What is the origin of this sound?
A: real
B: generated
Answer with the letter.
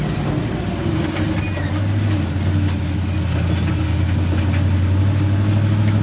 A